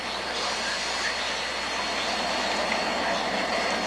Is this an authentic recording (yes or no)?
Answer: yes